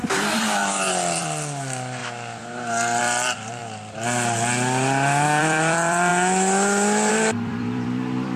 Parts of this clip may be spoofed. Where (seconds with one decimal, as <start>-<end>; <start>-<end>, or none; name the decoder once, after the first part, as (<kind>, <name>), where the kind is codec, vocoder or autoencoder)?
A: 0.0-2.0 (vocoder, BigVGAN v2); 3.0-3.6; 5.4-6.1; 7.1-8.4